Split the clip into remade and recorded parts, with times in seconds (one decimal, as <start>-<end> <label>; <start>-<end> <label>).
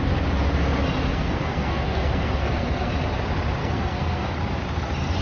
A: 0.0-1.1 recorded; 1.1-2.9 remade; 2.9-3.6 recorded; 3.6-4.3 remade; 4.3-5.2 recorded